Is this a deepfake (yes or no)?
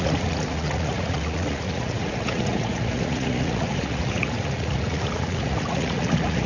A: yes